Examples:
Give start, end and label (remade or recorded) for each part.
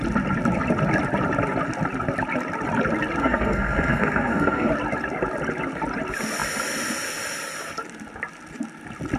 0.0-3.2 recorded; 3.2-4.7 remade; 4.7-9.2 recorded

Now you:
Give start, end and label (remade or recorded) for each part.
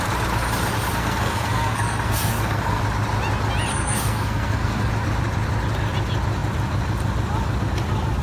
0.0-0.9 recorded; 0.9-2.8 remade; 2.8-3.7 recorded; 3.7-4.9 remade; 4.9-8.2 recorded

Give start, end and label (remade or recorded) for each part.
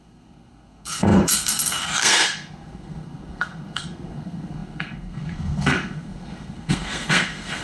0.0-7.6 remade